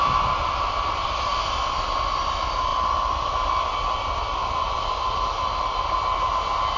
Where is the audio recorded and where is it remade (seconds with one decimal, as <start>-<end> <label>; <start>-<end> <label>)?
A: 0.0-6.8 recorded